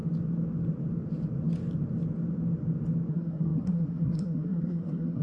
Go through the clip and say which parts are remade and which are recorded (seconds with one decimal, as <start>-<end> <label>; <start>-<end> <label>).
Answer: 0.0-3.1 recorded; 3.1-5.2 remade